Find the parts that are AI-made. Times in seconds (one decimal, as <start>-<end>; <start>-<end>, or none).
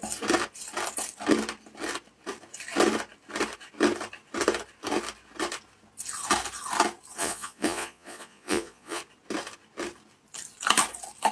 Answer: 7.2-9.0